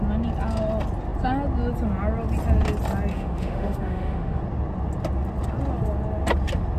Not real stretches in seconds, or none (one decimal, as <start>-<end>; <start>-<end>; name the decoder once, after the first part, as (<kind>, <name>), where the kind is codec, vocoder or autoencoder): 3.1-4.4 (autoencoder, DAC-VAE)